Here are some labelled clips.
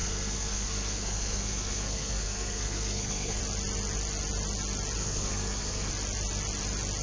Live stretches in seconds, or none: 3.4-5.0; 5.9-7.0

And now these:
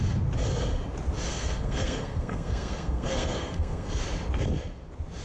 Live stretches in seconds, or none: 0.0-1.3; 4.0-5.2

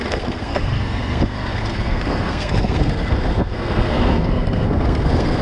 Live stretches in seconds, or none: none

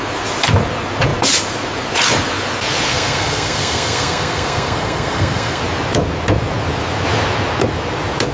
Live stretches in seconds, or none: 0.0-2.9; 5.6-8.3